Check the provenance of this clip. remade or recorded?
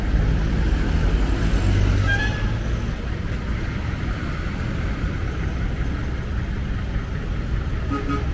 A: recorded